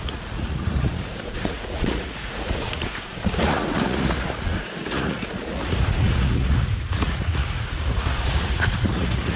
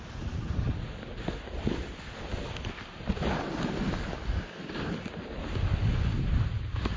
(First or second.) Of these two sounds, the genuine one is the second